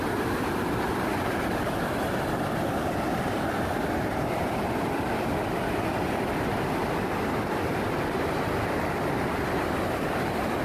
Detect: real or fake real